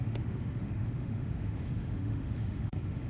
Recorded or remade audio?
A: remade